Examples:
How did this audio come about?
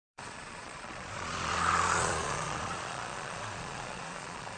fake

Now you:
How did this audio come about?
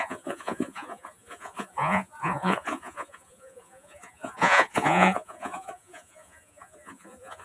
fake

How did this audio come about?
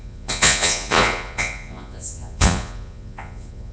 fake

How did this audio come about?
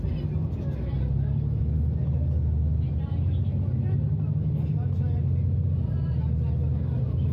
real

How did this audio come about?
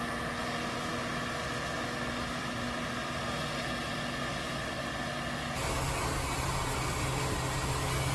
real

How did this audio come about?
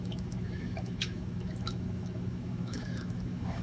fake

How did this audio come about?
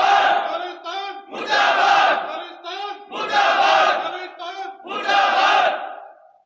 real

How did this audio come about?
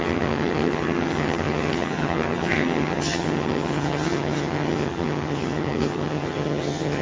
fake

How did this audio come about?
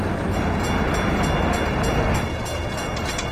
real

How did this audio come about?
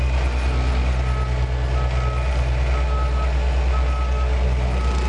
real